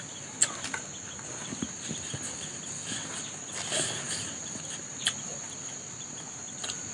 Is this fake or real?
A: real